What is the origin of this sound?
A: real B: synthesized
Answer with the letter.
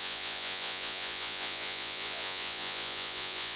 B